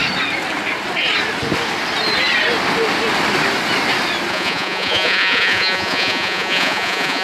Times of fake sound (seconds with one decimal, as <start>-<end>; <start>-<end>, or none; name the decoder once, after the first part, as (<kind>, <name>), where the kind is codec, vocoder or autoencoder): 4.3-7.2 (vocoder, Vocos)